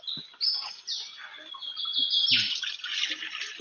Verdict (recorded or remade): recorded